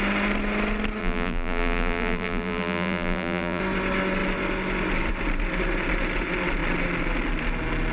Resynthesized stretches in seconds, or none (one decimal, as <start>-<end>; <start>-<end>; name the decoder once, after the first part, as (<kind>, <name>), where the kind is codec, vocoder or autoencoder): 1.0-3.6 (vocoder, BigVGAN v2)